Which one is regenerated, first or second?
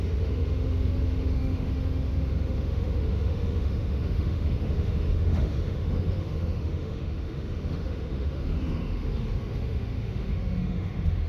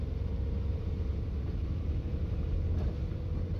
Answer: first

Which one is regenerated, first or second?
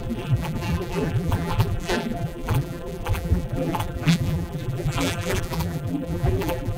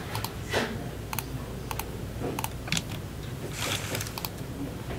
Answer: first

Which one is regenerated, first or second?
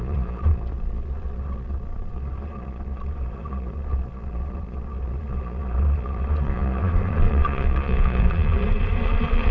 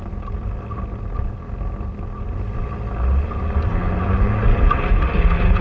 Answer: first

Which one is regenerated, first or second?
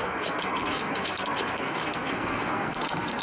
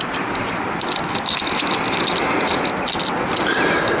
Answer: first